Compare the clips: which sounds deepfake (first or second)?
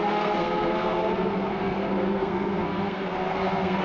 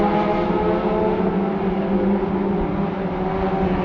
first